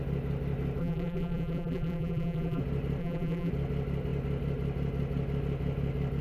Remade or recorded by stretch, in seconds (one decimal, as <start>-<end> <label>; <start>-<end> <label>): 0.0-0.8 recorded; 0.8-2.6 remade; 2.6-3.0 recorded; 3.0-3.5 remade; 3.5-6.2 recorded